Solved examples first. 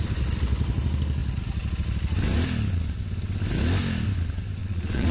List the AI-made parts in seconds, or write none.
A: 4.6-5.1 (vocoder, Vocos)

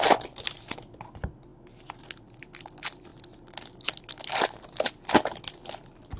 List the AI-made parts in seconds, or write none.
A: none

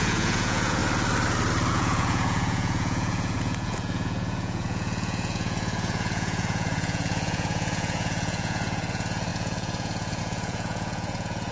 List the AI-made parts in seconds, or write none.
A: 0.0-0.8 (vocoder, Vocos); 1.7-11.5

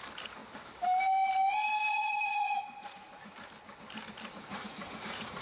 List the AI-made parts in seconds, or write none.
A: 1.9-3.3 (vocoder, Vocos); 4.5-5.4

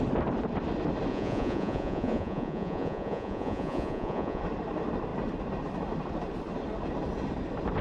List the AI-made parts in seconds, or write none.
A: 1.1-4.4 (vocoder, Vocos)

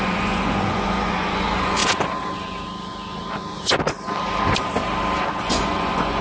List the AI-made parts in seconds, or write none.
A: 0.0-1.8 (vocoder, Vocos); 5.4-6.2